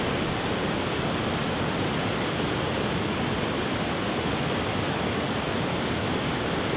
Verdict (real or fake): real